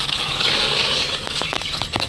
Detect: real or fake fake